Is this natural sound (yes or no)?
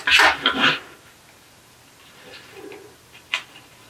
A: yes